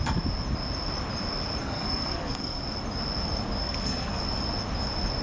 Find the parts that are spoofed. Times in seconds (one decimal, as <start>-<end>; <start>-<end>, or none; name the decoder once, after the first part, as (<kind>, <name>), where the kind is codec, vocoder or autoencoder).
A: 1.6-2.6 (codec, SNAC); 3.6-4.2